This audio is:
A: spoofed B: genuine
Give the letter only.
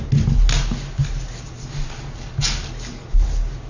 B